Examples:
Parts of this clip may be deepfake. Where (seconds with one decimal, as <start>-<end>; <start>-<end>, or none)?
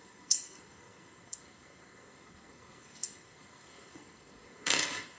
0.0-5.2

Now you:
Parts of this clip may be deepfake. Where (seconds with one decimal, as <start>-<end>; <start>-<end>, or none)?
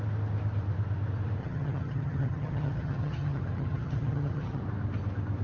1.4-4.6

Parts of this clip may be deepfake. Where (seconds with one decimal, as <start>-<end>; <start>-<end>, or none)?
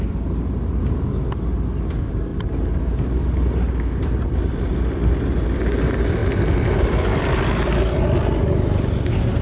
none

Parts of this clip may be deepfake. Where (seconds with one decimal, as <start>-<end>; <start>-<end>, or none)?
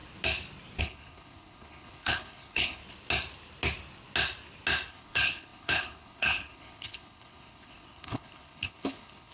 0.8-2.8; 4.9-9.3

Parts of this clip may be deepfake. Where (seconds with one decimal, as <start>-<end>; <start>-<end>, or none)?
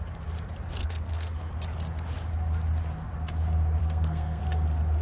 0.8-1.5; 3.8-4.4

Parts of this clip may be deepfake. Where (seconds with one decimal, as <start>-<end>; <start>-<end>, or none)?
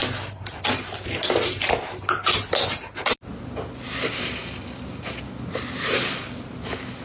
none